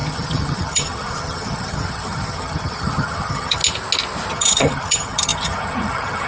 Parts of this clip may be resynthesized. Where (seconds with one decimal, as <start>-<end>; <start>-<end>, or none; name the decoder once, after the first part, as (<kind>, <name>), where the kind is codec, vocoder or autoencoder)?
0.0-3.6 (vocoder, HiFi-GAN); 4.3-6.3